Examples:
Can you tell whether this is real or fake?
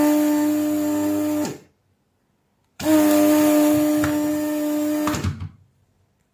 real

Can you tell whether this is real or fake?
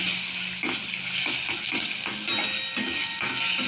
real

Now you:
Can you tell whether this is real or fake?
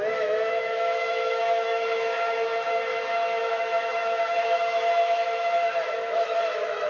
fake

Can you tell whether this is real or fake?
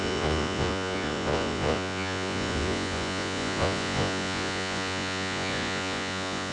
fake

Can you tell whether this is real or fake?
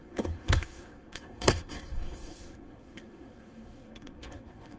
fake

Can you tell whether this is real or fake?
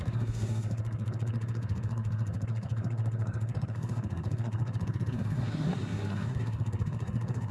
fake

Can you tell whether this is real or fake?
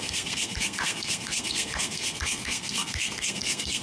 fake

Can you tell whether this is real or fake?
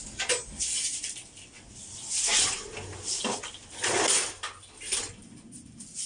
real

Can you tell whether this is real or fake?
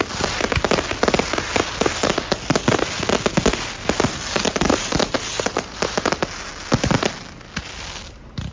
real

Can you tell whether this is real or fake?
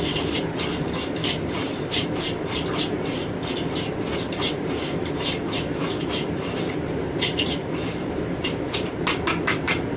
fake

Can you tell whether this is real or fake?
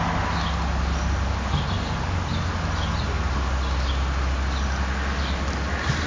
real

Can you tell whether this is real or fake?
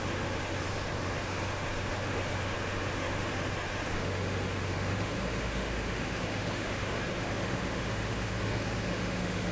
fake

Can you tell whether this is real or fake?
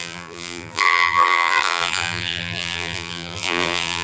fake